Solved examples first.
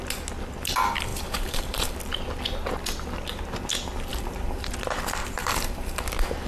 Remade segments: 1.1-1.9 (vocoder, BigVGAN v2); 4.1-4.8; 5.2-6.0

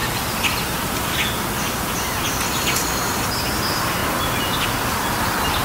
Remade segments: 0.0-4.0 (vocoder, BigVGAN v2); 4.6-5.6

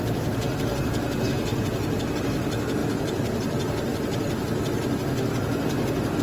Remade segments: none

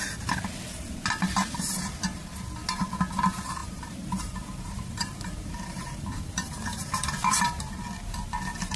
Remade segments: 3.6-7.3 (vocoder, BigVGAN v2)